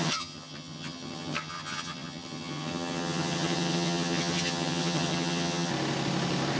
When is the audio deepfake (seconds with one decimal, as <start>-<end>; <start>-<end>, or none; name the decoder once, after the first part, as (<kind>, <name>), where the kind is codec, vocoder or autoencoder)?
0.0-5.7 (vocoder, HiFi-GAN)